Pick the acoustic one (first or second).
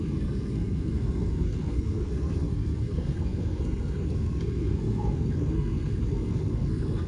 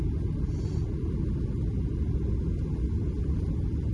second